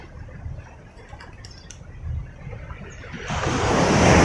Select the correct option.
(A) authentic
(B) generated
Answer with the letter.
A